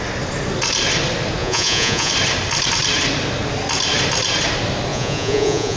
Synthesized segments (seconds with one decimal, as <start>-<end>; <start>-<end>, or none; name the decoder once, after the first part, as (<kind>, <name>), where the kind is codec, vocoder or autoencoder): 1.4-2.1 (vocoder, Vocos); 4.9-5.8